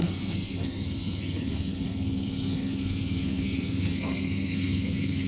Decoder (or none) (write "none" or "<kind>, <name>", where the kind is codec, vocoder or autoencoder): codec, SNAC